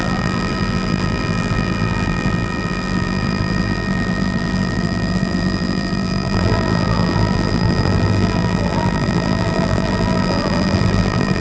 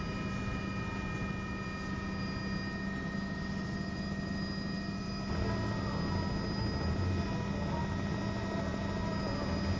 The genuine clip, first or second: second